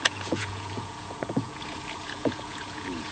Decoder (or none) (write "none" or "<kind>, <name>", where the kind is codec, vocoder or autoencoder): vocoder, Vocos